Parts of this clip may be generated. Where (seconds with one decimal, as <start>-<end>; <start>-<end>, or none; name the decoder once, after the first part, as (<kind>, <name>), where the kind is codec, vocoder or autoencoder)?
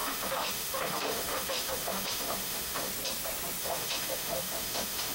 0.0-2.9 (autoencoder, DAC-VAE); 3.6-5.1